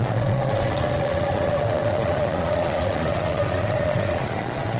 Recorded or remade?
remade